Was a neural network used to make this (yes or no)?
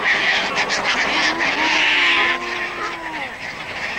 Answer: no